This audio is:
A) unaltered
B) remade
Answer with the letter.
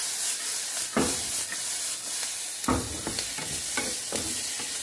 A